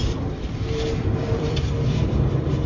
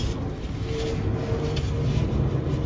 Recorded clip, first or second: second